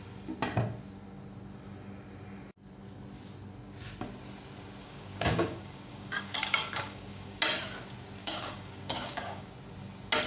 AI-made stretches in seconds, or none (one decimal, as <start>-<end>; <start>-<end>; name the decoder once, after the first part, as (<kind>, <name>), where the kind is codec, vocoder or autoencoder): 4.8-7.4 (codec, DAC); 8.2-9.5